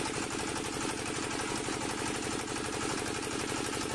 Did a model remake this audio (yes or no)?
no